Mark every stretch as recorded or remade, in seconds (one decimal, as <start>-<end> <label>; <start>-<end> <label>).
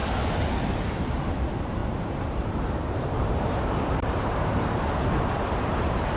0.0-1.3 recorded; 1.3-6.2 remade